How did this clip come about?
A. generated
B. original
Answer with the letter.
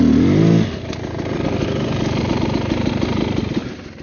B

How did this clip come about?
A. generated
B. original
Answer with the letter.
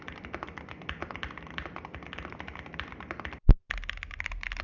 B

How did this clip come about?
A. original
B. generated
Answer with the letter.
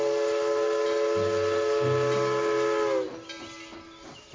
A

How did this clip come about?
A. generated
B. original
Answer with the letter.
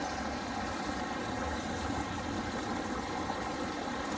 B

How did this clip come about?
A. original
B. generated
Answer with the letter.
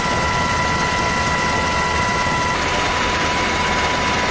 A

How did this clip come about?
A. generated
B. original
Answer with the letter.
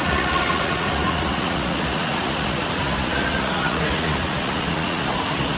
A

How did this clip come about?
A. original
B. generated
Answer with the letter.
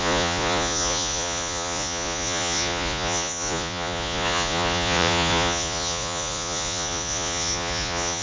B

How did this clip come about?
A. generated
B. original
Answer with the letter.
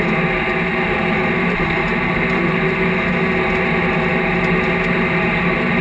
B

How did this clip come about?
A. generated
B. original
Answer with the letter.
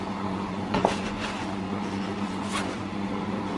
A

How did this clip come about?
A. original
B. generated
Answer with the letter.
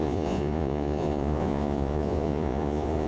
B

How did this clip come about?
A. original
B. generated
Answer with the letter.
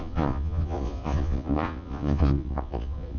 B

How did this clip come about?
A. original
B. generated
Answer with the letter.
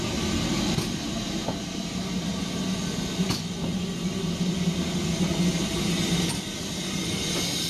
A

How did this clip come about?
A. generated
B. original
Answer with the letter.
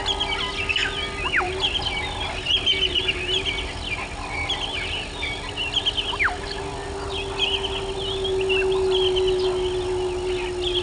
B